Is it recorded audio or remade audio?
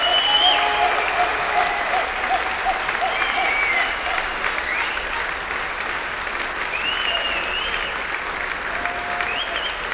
recorded